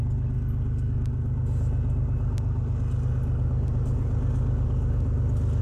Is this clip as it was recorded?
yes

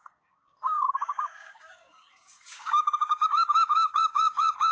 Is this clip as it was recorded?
no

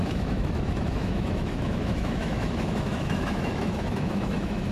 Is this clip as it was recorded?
no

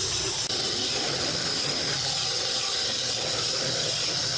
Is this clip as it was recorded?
yes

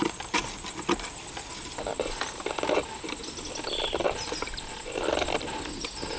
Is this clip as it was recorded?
yes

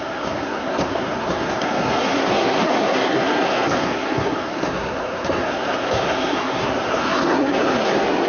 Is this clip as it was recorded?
no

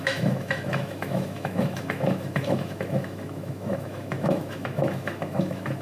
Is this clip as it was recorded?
no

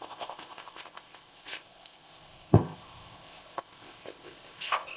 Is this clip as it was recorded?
no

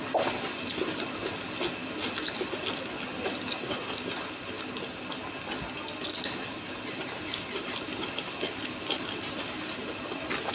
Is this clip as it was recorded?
yes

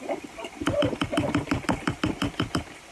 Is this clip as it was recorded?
yes